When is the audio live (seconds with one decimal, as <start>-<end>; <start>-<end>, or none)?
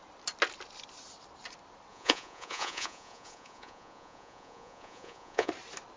0.0-1.9; 5.5-6.0